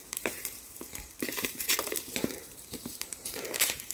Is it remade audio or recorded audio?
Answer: remade